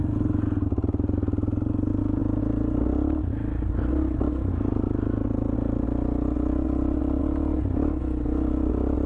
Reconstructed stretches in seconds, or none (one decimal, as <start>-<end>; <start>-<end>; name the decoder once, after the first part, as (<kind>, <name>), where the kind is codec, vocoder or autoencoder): none